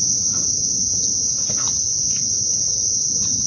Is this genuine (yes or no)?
yes